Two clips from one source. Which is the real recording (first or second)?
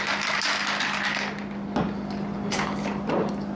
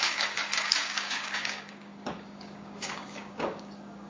first